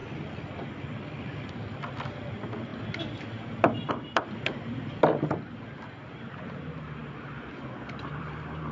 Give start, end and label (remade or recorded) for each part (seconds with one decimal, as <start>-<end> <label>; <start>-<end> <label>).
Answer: 0.0-0.9 recorded; 0.9-2.7 remade; 2.7-3.9 recorded; 3.9-7.0 remade; 7.0-7.9 recorded; 7.9-8.7 remade